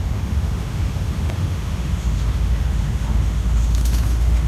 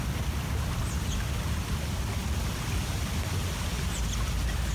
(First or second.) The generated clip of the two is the first